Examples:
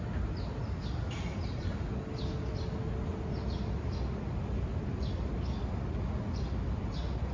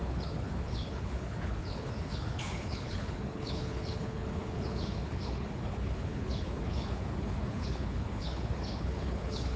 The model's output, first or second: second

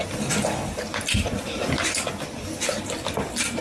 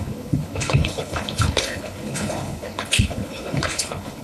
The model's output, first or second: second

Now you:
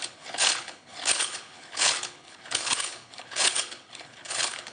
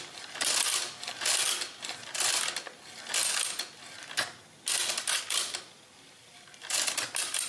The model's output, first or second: first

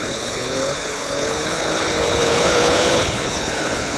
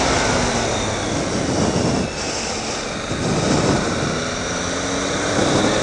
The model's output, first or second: first